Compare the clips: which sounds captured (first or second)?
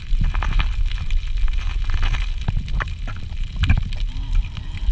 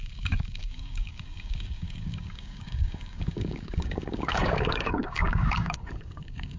first